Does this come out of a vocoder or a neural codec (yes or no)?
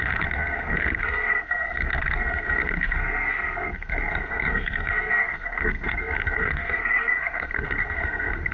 yes